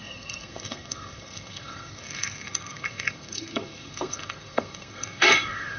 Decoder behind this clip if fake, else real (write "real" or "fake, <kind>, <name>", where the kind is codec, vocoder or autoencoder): fake, codec, SNAC